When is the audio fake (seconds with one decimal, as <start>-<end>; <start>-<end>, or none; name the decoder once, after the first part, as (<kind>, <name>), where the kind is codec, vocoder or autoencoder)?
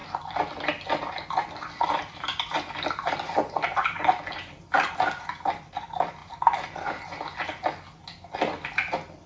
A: 0.0-4.9 (vocoder, BigVGAN v2); 6.2-6.9